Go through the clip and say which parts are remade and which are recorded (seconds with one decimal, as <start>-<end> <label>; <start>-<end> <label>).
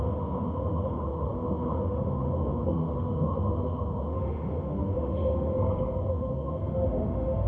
0.0-5.5 remade; 5.5-6.1 recorded; 6.1-7.5 remade